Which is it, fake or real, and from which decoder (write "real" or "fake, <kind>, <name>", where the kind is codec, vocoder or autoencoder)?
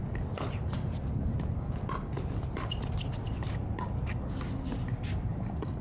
real